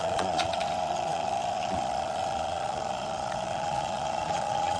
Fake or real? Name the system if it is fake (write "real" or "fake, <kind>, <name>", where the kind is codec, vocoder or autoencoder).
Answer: fake, vocoder, Vocos